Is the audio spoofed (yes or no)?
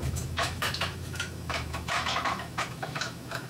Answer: yes